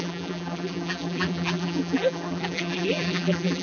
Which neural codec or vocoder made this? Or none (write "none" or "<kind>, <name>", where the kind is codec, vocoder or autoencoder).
vocoder, BigVGAN v2